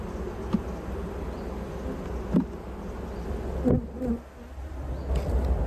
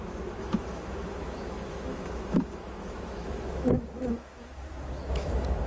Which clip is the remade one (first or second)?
second